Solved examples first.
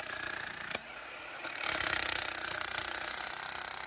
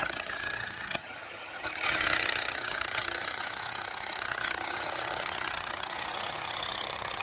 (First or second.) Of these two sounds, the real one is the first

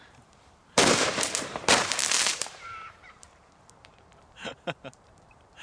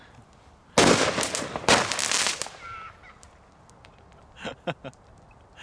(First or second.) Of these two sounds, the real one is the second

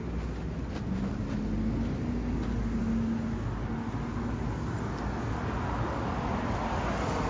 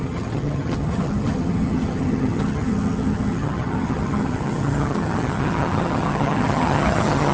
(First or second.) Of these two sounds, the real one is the first